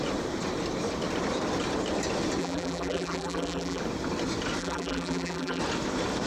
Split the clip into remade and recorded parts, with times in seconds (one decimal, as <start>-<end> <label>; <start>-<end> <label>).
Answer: 0.0-2.4 recorded; 2.4-3.8 remade; 3.8-4.6 recorded; 4.6-5.6 remade; 5.6-6.3 recorded